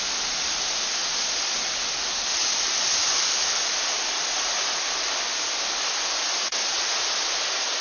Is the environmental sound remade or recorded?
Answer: recorded